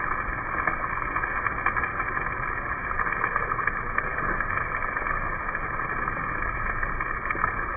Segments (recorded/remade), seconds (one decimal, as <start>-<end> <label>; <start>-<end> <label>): 0.0-7.8 recorded